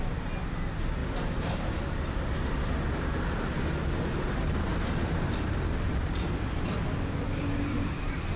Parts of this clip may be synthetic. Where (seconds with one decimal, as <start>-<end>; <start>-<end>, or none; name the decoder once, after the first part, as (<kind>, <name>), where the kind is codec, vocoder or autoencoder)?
1.0-4.3 (vocoder, BigVGAN v2); 4.7-8.4